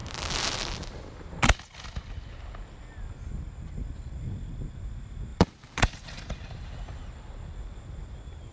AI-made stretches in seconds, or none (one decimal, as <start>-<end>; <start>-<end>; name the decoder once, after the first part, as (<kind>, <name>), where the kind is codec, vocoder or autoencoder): 5.3-7.0 (vocoder, BigVGAN v2)